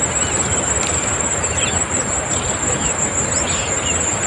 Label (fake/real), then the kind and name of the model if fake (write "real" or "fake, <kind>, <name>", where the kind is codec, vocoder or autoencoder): real